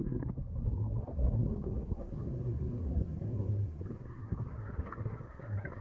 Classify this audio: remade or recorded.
remade